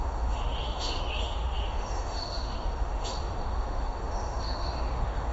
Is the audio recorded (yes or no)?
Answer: no